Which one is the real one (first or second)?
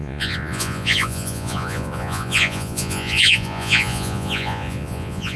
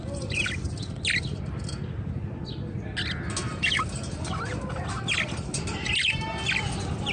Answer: second